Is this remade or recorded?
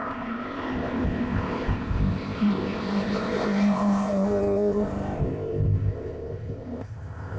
remade